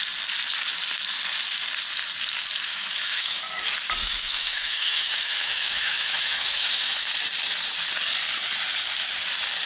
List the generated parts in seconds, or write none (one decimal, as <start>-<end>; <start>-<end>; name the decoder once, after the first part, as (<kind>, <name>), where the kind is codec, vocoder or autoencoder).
2.7-3.4 (autoencoder, DAC-VAE); 4.0-7.1